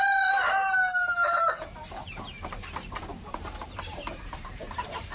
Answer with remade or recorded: remade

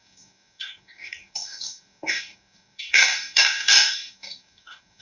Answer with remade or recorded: remade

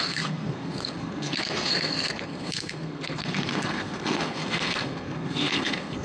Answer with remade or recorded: remade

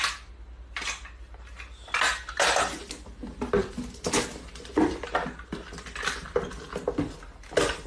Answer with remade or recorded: recorded